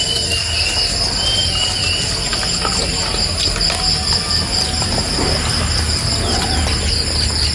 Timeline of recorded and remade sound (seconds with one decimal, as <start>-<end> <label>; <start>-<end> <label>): 0.0-7.5 recorded